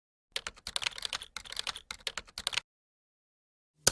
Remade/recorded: recorded